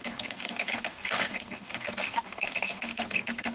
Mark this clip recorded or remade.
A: remade